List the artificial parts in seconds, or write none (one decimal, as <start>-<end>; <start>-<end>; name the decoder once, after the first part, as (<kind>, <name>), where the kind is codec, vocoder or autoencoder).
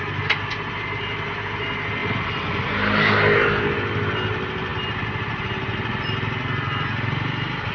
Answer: none